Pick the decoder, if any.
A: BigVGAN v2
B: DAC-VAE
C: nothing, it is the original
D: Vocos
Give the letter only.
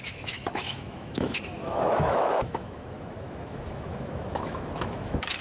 B